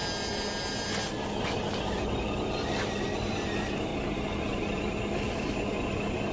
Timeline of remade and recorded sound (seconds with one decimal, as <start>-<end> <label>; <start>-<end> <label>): 0.0-2.0 recorded; 2.0-3.9 remade; 3.9-6.3 recorded